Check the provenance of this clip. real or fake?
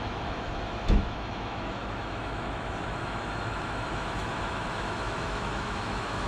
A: fake